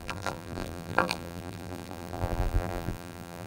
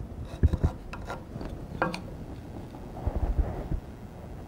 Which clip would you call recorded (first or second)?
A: second